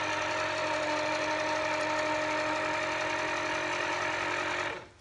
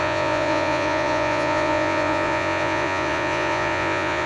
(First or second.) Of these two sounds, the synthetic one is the second